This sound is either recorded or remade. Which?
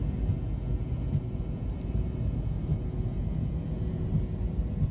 recorded